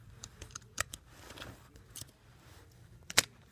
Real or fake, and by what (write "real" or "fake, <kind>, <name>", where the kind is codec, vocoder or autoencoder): fake, vocoder, BigVGAN v2